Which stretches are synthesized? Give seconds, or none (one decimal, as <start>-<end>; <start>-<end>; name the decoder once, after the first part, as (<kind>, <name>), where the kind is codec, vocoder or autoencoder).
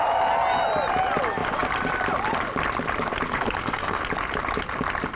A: 3.3-4.0 (codec, SNAC)